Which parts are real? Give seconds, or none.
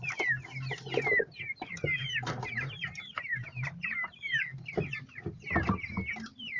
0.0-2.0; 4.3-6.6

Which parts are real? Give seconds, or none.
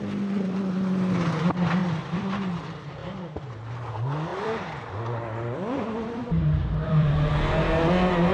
0.0-1.8; 2.5-4.3; 7.3-8.3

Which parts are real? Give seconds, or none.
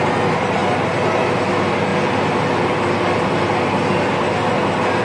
0.0-5.0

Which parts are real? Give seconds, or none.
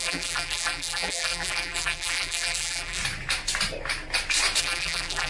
3.0-4.6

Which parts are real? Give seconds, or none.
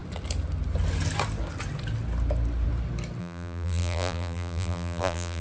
0.0-3.2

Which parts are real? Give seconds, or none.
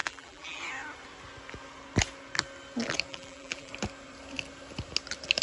0.6-3.1; 3.7-5.4